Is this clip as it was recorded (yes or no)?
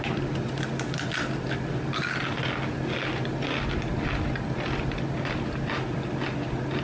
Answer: yes